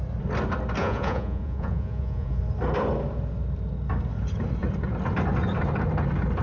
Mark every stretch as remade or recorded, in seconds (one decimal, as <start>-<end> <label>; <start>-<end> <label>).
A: 0.0-0.8 recorded; 0.8-2.4 remade; 2.4-6.4 recorded